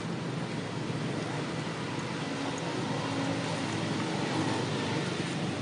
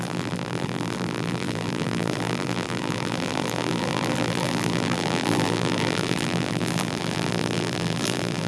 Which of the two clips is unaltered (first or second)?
first